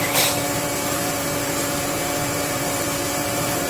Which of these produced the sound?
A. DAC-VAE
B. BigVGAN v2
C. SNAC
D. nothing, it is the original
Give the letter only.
B